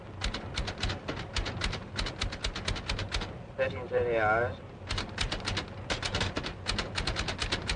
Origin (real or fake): real